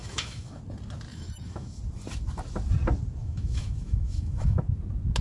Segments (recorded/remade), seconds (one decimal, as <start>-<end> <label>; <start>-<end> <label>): 0.0-0.6 remade; 0.6-1.1 recorded; 1.1-1.8 remade; 1.8-3.2 recorded; 3.2-4.6 remade; 4.6-5.2 recorded